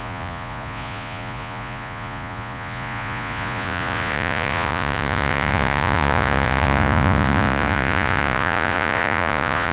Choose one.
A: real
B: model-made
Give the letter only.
B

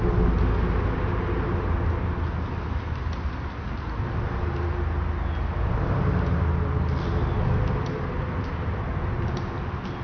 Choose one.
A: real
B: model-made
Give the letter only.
A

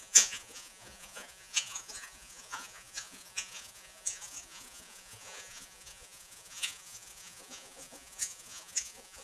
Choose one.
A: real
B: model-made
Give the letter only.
B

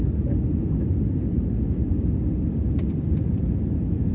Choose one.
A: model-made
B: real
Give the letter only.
B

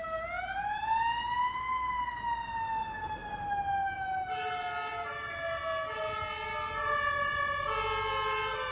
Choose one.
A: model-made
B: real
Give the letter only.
B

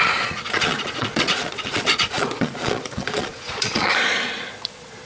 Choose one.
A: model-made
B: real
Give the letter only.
A